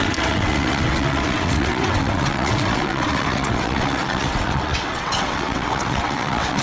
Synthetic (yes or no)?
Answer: yes